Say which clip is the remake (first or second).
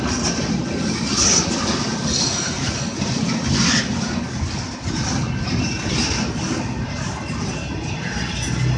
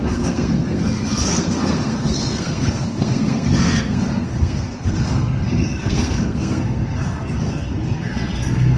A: second